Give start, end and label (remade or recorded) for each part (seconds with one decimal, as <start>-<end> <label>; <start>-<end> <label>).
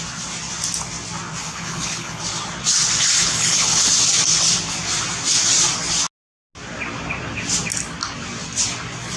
0.0-1.4 recorded; 1.4-2.2 remade; 2.2-3.2 recorded; 3.2-3.9 remade; 3.9-9.2 recorded